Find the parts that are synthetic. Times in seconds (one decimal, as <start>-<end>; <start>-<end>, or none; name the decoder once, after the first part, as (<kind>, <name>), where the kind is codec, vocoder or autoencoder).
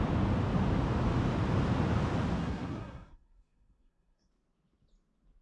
2.4-4.3 (codec, SNAC)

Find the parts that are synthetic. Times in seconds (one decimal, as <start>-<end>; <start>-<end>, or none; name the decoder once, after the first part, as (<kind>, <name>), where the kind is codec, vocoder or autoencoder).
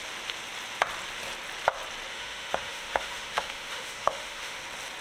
2.1-4.6 (autoencoder, DAC-VAE)